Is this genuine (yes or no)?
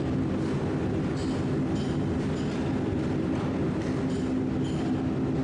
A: yes